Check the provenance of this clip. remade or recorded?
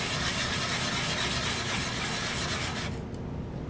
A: recorded